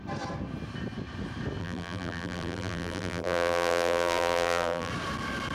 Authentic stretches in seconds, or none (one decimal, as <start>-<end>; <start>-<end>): 0.0-1.6; 4.9-5.5